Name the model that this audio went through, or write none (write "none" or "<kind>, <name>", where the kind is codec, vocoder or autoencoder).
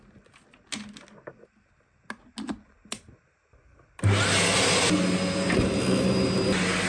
none